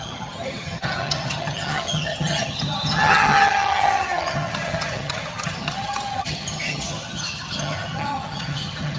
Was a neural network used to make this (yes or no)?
yes